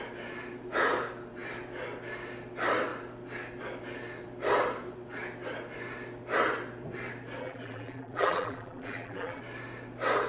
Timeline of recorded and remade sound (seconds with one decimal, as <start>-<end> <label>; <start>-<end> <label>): 0.0-7.4 recorded; 7.4-9.4 remade; 9.4-10.3 recorded